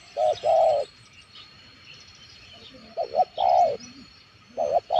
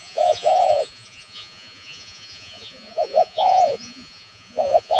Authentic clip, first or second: first